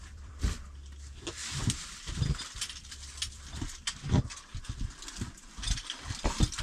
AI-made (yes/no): yes